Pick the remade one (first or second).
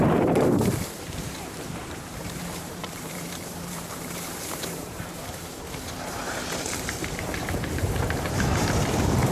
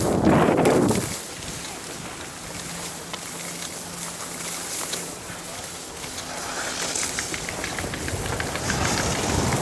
first